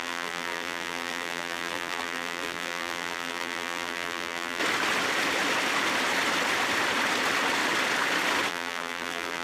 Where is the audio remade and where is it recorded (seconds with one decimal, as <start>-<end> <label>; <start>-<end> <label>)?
0.0-4.6 remade; 4.6-8.5 recorded; 8.5-9.4 remade